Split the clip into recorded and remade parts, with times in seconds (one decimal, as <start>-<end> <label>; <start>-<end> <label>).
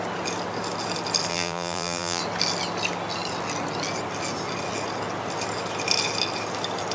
0.0-1.3 recorded; 1.3-2.2 remade; 2.2-6.9 recorded